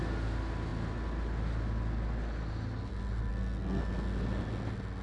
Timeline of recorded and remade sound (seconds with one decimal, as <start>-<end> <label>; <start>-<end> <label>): 0.0-3.3 recorded; 3.3-3.8 remade; 3.8-5.0 recorded